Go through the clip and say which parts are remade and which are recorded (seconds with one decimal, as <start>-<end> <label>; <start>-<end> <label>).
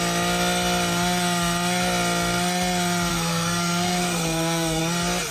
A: 0.0-3.1 recorded; 3.1-4.8 remade; 4.8-5.3 recorded